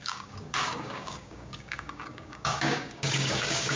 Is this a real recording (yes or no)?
no